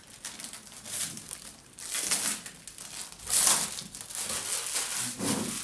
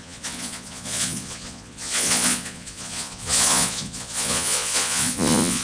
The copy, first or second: second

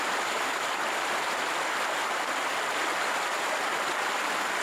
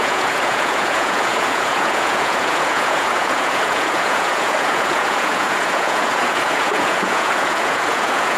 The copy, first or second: second